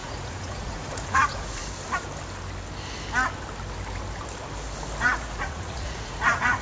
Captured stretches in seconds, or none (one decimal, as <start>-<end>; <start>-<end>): 1.6-5.0